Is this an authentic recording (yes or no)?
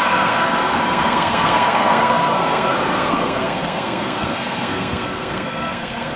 no